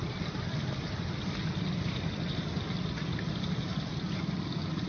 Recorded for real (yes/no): yes